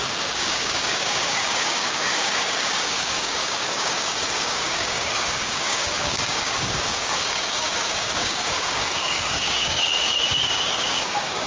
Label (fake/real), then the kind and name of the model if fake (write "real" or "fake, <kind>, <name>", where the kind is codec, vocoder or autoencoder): fake, codec, DAC